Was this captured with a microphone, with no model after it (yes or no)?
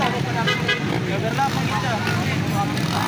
yes